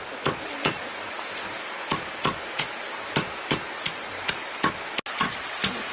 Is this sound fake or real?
real